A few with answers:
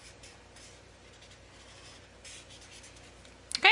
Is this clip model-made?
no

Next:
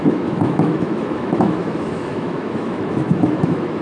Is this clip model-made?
yes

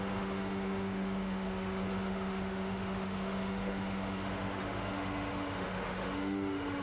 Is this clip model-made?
yes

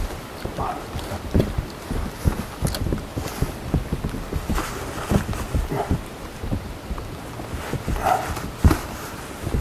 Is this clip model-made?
no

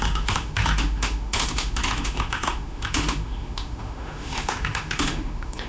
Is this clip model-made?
yes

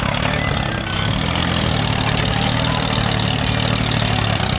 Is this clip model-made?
no